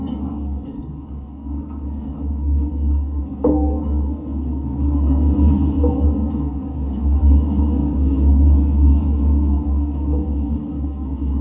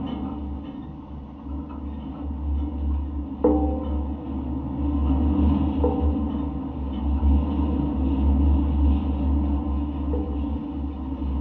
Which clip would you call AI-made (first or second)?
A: first